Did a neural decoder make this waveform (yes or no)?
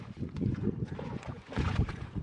yes